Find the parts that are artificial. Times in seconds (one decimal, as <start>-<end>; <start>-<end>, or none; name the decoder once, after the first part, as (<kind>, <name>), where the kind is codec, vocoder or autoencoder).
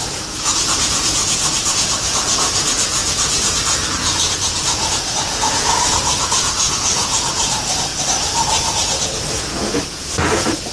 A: 0.0-7.9 (vocoder, Vocos); 9.0-10.7